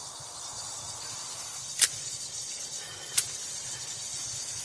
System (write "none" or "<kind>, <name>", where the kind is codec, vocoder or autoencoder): vocoder, BigVGAN v2